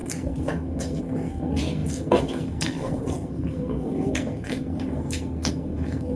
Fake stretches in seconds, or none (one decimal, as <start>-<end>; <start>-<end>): 0.0-6.2